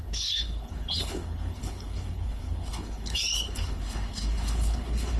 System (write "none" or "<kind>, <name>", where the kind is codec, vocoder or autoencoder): codec, HILCodec